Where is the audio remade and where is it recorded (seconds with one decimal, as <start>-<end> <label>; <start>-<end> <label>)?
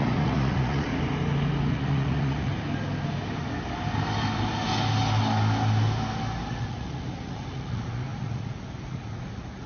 0.0-0.9 remade; 0.9-1.7 recorded; 1.7-2.5 remade; 2.5-6.5 recorded; 6.5-9.7 remade